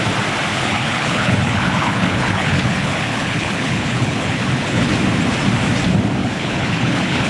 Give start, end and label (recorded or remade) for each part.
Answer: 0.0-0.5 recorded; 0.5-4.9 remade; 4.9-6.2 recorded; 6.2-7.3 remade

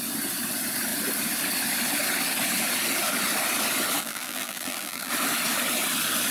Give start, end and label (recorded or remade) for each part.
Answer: 0.0-4.0 recorded; 4.0-5.1 remade; 5.1-6.3 recorded

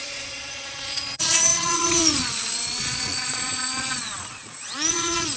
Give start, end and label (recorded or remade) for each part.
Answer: 0.0-5.4 remade

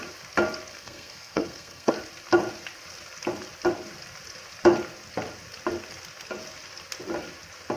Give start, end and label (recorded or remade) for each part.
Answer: 0.0-0.7 recorded; 0.7-1.9 remade; 1.9-7.8 recorded

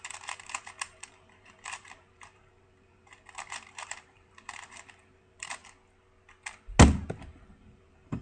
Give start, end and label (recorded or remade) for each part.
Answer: 0.0-5.6 remade; 5.6-7.6 recorded; 7.6-8.2 remade

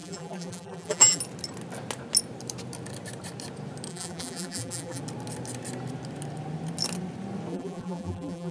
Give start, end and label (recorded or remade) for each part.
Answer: 0.0-1.2 remade; 1.2-3.9 recorded; 3.9-5.0 remade; 5.0-7.5 recorded; 7.5-8.5 remade